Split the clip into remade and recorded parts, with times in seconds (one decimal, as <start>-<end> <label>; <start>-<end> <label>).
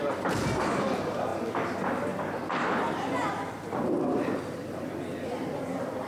0.0-1.3 remade; 1.3-3.3 recorded; 3.3-6.1 remade